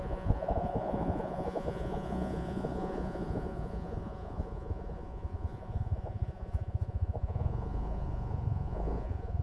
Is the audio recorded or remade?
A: remade